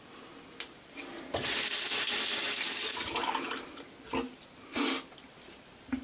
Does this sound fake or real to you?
real